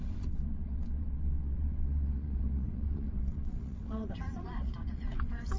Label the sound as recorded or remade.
remade